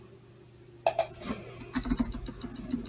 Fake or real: real